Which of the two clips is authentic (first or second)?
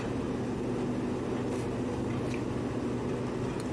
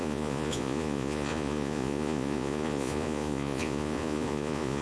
first